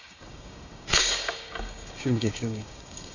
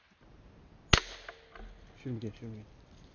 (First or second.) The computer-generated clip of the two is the first